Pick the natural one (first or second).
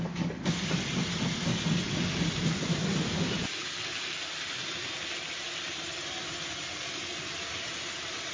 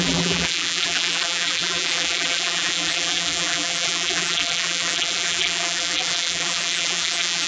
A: first